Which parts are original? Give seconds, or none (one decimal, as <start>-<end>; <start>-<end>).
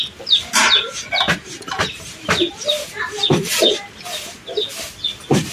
0.0-0.6; 3.7-5.5